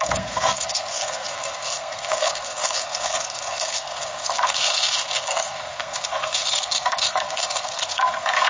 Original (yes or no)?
no